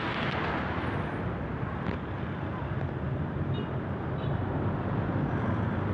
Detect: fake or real real